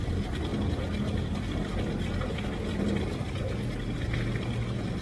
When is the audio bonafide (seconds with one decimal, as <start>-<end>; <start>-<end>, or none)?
0.0-5.0